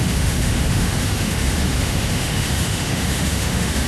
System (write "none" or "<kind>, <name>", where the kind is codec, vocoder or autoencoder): autoencoder, DAC-VAE